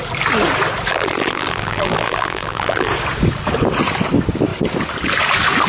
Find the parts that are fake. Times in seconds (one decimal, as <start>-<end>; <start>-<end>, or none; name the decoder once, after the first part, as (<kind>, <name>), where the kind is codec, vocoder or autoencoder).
0.9-2.9 (vocoder, BigVGAN v2)